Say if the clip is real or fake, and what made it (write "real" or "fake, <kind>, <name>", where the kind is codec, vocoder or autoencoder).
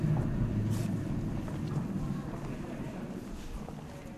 real